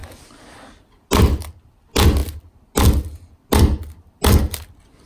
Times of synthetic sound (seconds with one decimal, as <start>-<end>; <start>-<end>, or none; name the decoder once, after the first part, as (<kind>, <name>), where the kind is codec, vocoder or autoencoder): none